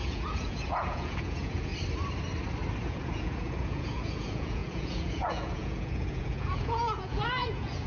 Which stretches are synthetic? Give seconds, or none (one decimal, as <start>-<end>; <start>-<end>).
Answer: 0.0-1.7; 2.8-7.9